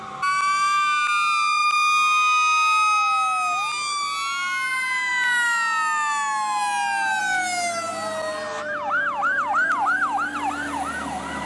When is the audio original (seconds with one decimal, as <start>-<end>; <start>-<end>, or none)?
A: 0.0-11.5